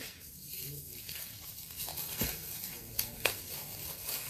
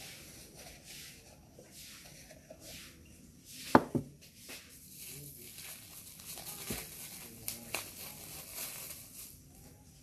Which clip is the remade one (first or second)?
first